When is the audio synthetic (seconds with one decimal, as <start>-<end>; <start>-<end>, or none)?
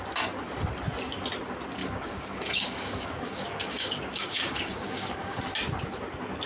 1.8-5.4